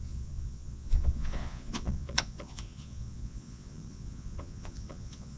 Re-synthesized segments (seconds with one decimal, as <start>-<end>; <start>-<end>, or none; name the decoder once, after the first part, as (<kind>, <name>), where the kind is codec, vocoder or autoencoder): 0.0-5.4 (vocoder, Vocos)